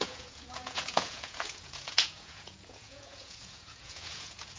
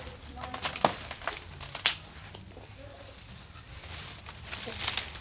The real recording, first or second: second